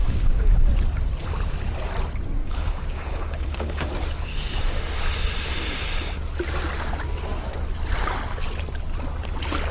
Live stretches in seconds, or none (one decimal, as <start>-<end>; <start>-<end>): 0.7-2.4; 3.9-9.7